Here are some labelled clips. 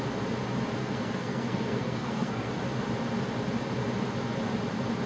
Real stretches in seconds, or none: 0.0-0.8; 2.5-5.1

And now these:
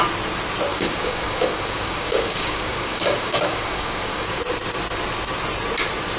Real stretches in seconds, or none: 0.0-0.7; 4.4-6.2

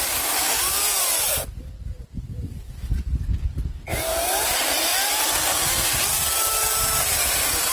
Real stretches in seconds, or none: 2.0-2.7